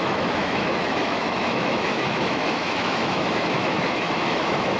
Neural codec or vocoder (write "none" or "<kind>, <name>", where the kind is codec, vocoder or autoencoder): autoencoder, DAC-VAE